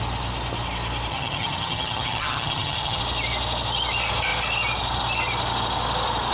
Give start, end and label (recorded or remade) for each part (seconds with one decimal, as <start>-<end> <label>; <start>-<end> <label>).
0.0-1.1 recorded; 1.1-3.0 remade; 3.0-6.3 recorded